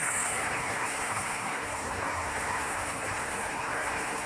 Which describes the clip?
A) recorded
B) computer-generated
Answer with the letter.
B